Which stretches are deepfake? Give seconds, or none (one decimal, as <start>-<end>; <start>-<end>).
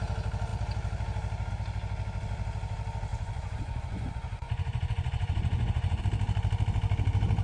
3.1-6.0